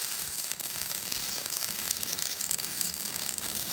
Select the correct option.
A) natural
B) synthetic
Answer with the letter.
B